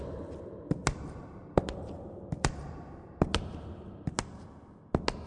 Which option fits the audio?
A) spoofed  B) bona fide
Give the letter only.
B